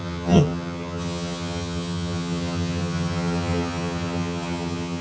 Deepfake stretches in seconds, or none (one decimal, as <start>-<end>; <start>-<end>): 0.0-5.0

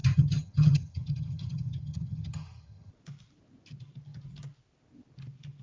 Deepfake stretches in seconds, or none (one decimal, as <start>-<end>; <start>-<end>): 0.0-2.9

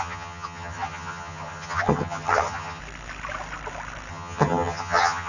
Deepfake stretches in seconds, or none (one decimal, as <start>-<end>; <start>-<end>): 0.0-2.8; 4.1-5.3

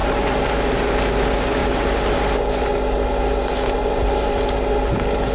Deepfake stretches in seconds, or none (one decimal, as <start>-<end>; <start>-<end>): none

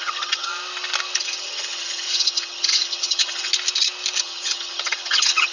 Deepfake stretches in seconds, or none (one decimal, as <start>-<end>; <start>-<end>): 0.0-0.5; 1.2-3.5; 4.2-5.5

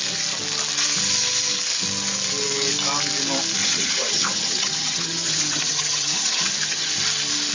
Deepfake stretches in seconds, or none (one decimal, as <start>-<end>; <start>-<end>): 3.6-6.9